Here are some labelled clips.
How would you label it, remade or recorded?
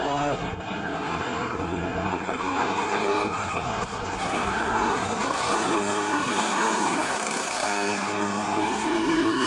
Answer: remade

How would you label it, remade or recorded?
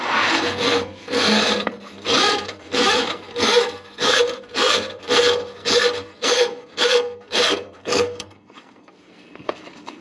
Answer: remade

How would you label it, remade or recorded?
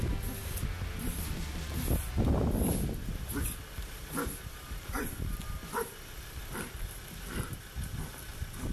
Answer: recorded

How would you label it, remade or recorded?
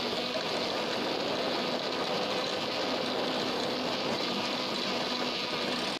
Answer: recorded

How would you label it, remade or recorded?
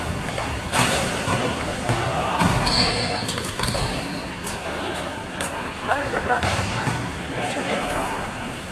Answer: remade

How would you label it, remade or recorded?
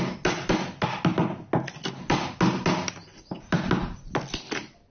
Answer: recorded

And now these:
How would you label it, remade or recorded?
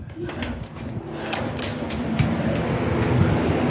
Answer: recorded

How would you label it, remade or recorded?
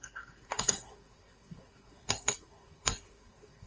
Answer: remade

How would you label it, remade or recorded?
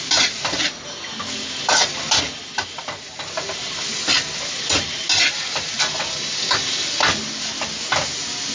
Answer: recorded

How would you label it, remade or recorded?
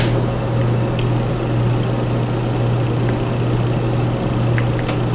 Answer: recorded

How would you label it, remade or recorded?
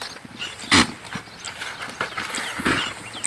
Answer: recorded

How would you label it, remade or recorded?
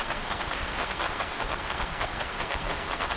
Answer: remade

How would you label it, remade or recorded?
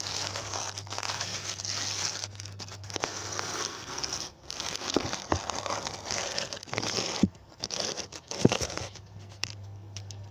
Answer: remade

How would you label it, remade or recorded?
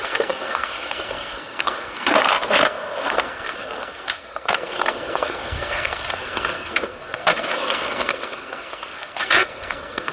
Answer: remade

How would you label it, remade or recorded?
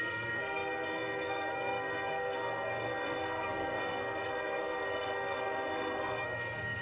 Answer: remade